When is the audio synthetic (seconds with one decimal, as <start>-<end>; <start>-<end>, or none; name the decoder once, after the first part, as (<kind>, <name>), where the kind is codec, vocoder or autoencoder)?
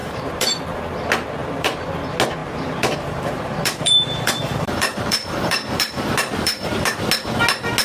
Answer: 0.0-0.6 (vocoder, BigVGAN v2); 1.4-1.9; 2.4-7.0